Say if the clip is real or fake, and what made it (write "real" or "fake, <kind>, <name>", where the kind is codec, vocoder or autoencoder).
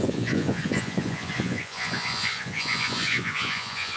fake, vocoder, Vocos